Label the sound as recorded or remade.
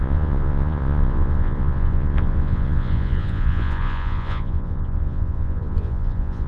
remade